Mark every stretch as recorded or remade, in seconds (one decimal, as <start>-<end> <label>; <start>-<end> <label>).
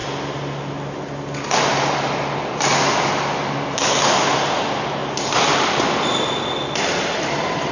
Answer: 0.0-7.7 recorded